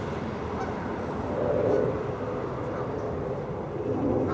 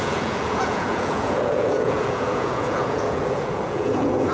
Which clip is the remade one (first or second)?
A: second